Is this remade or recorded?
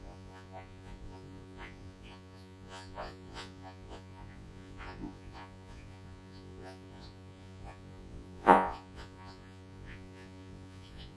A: remade